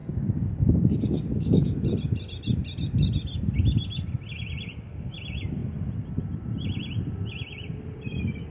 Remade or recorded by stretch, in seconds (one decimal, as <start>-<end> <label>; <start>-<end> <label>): 0.0-1.7 remade; 1.7-8.5 recorded